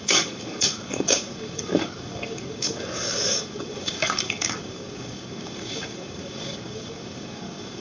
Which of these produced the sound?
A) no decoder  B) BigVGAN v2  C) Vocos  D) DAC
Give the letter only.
D